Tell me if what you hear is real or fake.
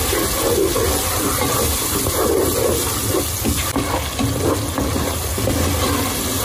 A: real